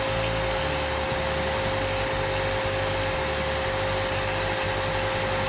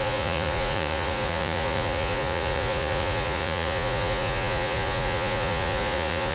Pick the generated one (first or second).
second